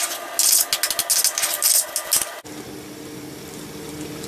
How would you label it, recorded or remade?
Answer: recorded